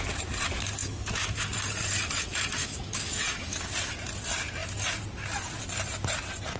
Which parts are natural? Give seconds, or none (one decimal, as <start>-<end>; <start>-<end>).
0.0-0.8; 1.4-2.6; 3.7-6.6